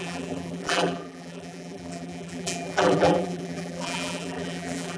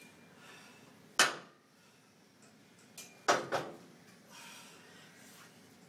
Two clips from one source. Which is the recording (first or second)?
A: second